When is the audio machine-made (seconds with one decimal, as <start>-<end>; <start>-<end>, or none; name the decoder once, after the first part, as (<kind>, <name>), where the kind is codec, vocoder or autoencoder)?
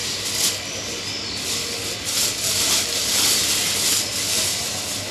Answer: none